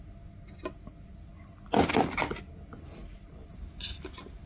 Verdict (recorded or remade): recorded